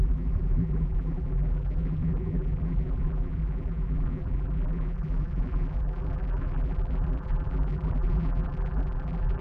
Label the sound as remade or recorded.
remade